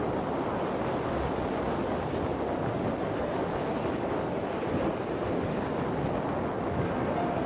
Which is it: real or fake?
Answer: real